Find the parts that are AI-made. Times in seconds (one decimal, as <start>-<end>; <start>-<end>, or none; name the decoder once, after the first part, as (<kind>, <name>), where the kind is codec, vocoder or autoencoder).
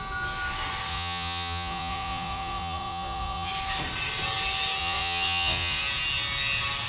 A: 0.9-3.5 (vocoder, Vocos); 4.8-5.8